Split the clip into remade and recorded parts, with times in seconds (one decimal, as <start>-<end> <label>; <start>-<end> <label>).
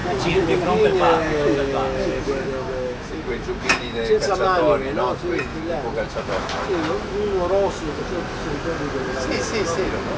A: 0.0-4.1 remade; 4.1-5.5 recorded; 5.5-8.0 remade; 8.0-10.2 recorded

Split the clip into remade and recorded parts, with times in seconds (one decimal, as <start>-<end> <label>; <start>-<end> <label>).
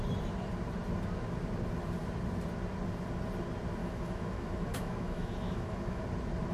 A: 0.0-3.8 recorded; 3.8-6.0 remade; 6.0-6.5 recorded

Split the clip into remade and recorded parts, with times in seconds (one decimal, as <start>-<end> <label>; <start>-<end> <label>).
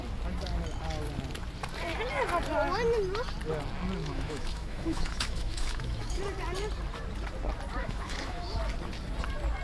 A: 0.0-4.0 recorded; 4.0-6.2 remade; 6.2-7.8 recorded; 7.8-8.6 remade; 8.6-9.6 recorded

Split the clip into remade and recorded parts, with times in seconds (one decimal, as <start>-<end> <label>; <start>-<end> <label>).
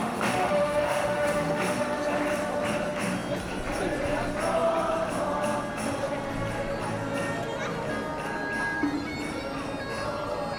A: 0.0-1.8 remade; 1.8-10.6 recorded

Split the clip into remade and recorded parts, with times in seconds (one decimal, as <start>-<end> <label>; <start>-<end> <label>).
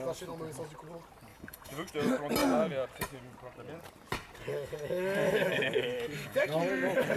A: 0.0-1.3 recorded; 1.3-1.9 remade; 1.9-4.5 recorded; 4.5-6.7 remade; 6.7-7.2 recorded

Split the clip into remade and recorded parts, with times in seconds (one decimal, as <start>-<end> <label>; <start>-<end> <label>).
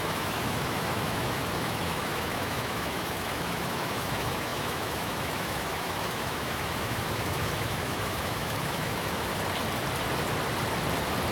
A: 0.0-9.3 remade; 9.3-11.3 recorded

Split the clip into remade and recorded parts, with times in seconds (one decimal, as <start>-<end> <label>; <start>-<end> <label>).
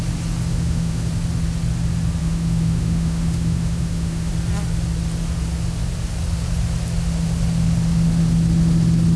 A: 0.0-0.5 recorded; 0.5-1.1 remade; 1.1-2.2 recorded; 2.2-4.3 remade; 4.3-9.2 recorded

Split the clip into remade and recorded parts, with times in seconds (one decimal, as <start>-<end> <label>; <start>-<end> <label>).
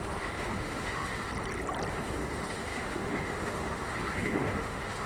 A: 0.0-1.3 remade; 1.3-1.9 recorded; 1.9-5.1 remade